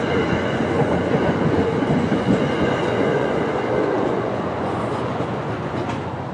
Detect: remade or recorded remade